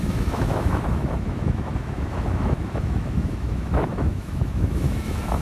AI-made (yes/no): yes